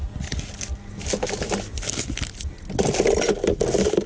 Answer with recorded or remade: recorded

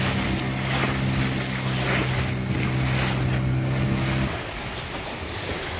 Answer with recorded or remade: recorded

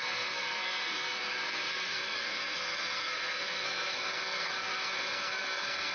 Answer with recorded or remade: remade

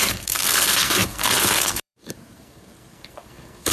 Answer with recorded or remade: remade